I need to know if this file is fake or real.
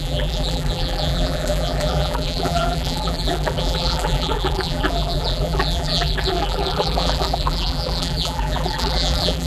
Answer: fake